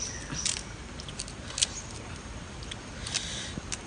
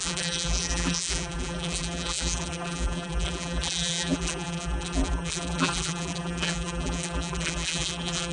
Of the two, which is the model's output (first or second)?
second